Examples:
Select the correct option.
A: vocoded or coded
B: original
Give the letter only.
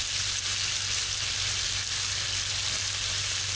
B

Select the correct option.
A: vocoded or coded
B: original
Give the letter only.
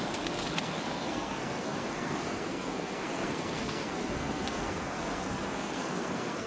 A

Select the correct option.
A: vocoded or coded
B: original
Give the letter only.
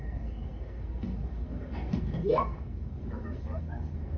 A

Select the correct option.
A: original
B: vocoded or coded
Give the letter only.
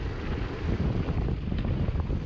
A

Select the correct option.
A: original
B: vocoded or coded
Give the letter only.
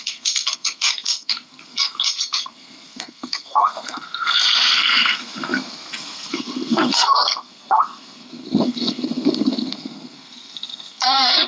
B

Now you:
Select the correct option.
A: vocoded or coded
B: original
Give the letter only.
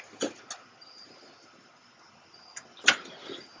B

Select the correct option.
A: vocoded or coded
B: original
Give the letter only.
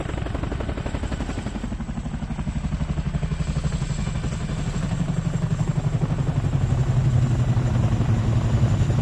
B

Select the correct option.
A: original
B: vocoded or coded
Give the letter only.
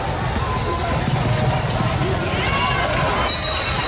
A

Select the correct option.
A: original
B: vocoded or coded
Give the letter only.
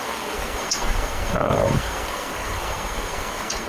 B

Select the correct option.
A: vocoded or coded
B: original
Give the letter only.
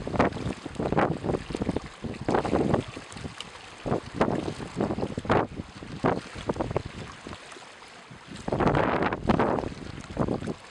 B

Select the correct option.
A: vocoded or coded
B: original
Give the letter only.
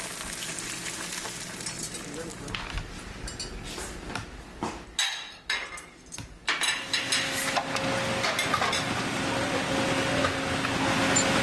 B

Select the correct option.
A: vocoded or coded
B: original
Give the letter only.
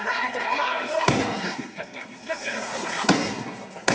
A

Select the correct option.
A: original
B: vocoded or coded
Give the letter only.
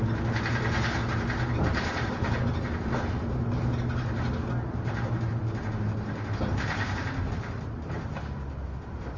A